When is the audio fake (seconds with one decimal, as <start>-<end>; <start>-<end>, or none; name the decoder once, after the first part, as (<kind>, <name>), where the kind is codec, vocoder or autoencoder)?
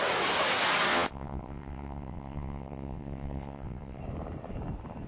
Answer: 0.9-4.0 (vocoder, WaveNeXt)